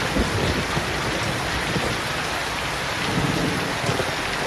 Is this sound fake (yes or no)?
no